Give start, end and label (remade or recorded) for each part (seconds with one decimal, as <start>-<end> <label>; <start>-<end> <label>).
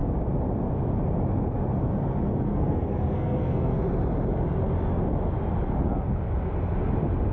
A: 0.0-2.5 recorded; 2.5-3.8 remade; 3.8-7.3 recorded